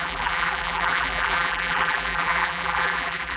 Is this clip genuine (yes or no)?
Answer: no